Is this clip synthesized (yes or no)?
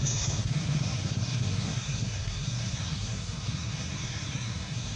yes